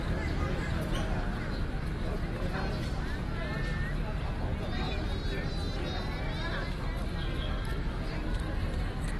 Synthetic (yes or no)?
no